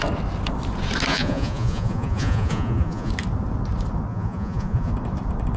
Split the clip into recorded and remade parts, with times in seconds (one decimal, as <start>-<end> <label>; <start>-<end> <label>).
0.0-1.1 recorded; 1.1-3.1 remade; 3.1-4.1 recorded; 4.1-4.9 remade; 4.9-5.6 recorded